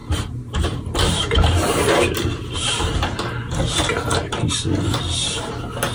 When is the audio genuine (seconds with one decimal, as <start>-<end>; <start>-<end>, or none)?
3.5-5.9